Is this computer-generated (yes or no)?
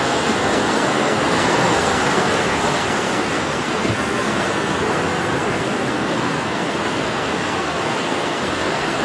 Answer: yes